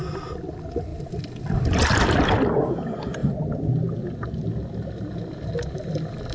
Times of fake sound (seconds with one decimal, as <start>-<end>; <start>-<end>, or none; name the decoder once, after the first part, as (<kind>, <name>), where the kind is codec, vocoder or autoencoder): 0.9-2.3 (vocoder, BigVGAN v2); 3.2-4.3